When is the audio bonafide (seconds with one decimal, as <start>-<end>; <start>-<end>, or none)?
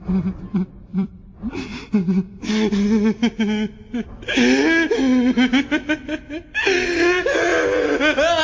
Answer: 0.0-0.9; 1.9-8.4